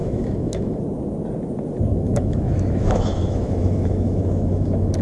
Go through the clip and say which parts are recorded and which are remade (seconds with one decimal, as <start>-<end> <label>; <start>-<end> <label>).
0.0-0.8 remade; 0.8-1.9 recorded; 1.9-5.0 remade